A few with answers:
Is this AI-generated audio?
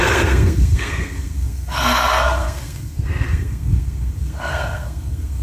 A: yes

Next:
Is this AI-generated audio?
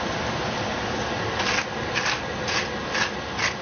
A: no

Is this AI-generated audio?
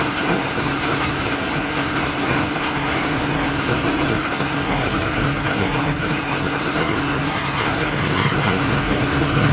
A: yes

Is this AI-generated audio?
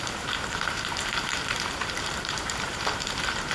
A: yes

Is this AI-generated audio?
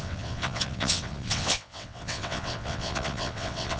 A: yes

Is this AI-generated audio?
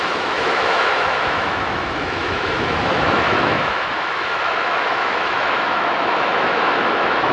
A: yes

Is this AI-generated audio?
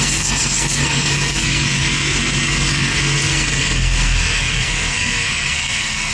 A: yes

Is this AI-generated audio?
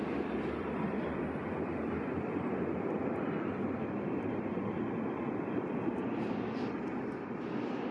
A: yes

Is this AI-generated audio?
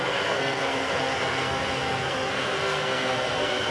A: yes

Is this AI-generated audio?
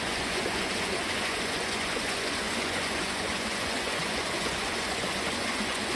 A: yes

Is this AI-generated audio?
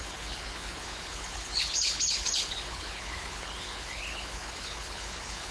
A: yes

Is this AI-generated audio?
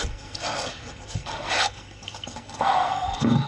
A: yes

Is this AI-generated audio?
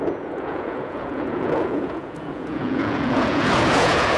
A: yes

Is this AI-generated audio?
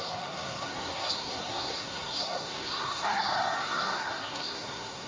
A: yes